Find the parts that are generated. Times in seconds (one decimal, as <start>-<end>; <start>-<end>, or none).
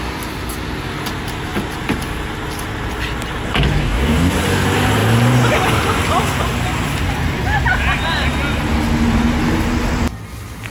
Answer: 3.8-4.3